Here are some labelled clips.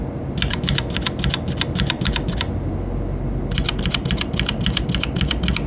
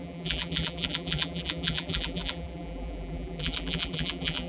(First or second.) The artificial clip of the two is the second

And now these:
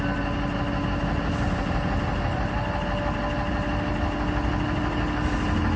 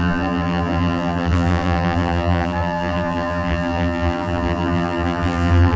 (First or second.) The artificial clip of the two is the second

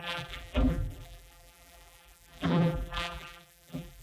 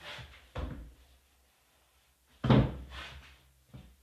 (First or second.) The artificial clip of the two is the first